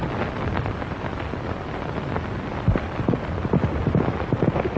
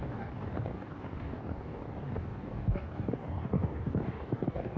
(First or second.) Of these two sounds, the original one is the first